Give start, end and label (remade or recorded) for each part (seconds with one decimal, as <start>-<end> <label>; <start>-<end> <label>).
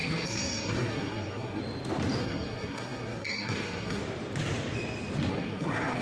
0.0-1.6 remade; 1.6-2.2 recorded; 2.2-4.0 remade; 4.0-5.3 recorded; 5.3-6.0 remade